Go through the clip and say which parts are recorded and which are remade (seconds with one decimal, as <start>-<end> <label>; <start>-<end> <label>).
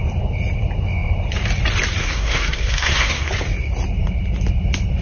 0.0-2.0 recorded; 2.0-3.3 remade; 3.3-5.0 recorded